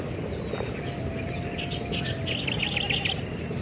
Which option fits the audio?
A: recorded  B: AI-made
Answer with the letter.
A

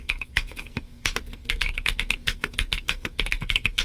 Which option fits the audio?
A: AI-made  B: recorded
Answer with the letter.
A